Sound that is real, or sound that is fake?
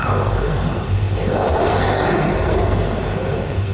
fake